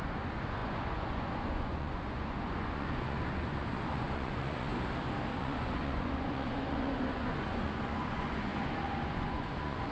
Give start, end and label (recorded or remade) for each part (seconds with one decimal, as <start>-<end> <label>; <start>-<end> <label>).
0.0-4.7 remade; 4.7-5.3 recorded; 5.3-9.9 remade